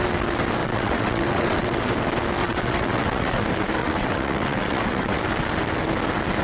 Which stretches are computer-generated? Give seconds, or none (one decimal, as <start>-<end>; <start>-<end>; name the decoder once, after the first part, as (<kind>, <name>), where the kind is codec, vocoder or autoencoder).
0.6-1.8 (vocoder, WaveNeXt); 2.4-3.4; 3.8-5.2